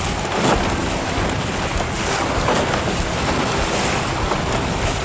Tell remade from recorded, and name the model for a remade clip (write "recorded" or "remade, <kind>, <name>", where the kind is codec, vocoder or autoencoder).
recorded